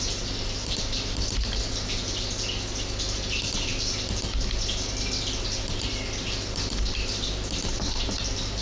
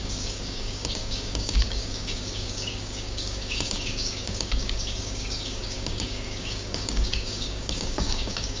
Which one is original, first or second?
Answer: first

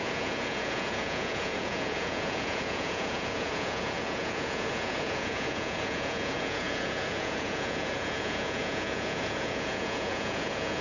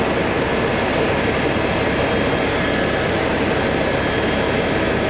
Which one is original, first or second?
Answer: second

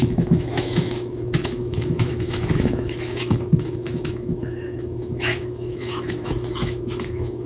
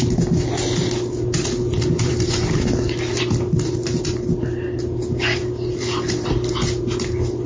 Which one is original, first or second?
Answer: second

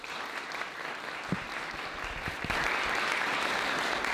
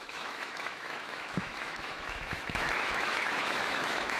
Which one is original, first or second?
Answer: first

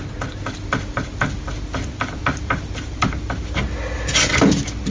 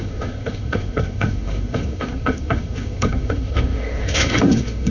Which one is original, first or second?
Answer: first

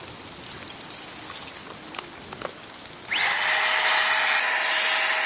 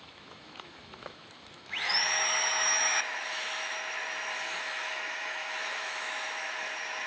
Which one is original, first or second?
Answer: first